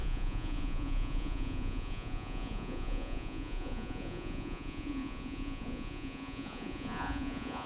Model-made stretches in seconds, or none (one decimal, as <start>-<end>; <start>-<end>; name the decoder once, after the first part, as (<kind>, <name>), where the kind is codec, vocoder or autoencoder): 0.0-7.7 (vocoder, Vocos)